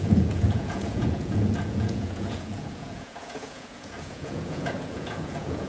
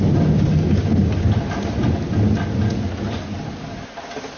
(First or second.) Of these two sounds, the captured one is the second